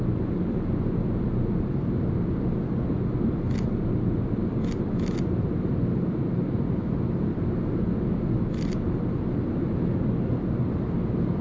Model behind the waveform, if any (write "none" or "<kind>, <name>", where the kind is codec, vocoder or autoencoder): none